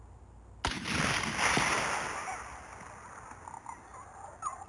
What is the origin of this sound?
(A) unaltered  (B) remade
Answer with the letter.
A